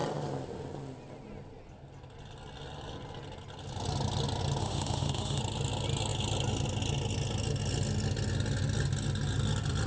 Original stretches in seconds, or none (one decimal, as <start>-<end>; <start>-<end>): 0.0-4.6; 5.4-9.9